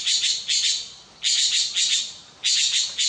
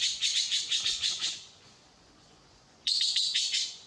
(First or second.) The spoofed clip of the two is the second